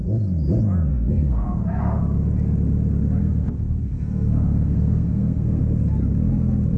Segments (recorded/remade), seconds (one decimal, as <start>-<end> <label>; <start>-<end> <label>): 0.0-0.9 recorded; 0.9-2.0 remade; 2.0-3.2 recorded; 3.2-5.6 remade; 5.6-6.8 recorded

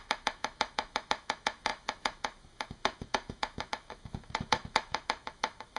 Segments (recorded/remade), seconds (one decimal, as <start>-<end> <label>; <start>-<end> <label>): 0.0-5.8 remade

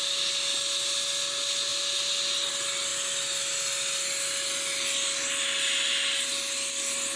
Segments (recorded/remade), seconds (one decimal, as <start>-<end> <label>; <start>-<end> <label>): 0.0-7.2 recorded

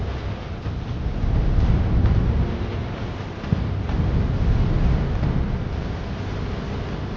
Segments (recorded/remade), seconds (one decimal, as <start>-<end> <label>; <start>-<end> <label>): 0.0-7.2 recorded

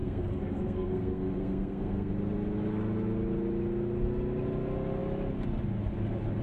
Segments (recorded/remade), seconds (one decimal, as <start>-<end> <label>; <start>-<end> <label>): 0.0-2.1 remade; 2.1-6.4 recorded